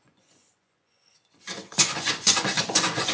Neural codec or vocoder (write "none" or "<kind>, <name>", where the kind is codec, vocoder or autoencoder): vocoder, Vocos